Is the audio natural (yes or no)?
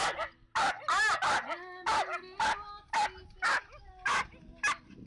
yes